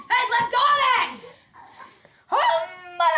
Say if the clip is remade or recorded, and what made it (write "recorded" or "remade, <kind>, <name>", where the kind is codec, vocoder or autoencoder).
recorded